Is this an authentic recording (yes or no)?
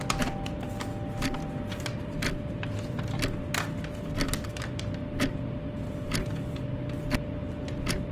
yes